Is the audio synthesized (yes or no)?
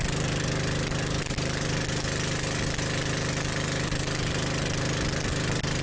no